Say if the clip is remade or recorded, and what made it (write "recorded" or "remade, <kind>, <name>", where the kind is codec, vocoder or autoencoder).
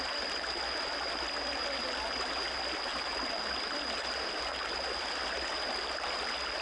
recorded